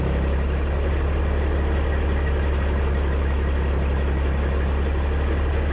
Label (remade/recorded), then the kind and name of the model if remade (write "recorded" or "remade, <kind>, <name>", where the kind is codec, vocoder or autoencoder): recorded